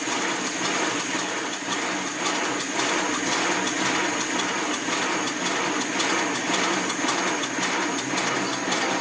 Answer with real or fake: real